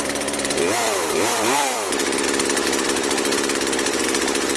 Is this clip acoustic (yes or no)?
no